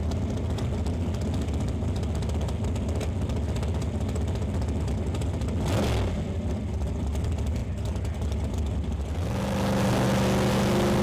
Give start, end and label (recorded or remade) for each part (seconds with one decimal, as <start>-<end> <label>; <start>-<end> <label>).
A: 0.0-11.0 recorded